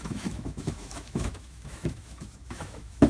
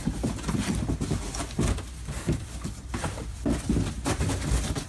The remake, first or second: first